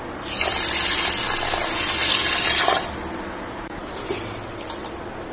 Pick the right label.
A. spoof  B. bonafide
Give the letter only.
B